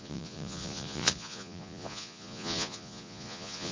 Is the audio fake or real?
fake